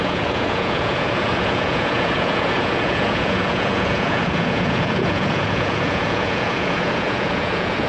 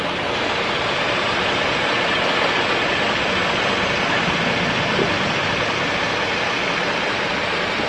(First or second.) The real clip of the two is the second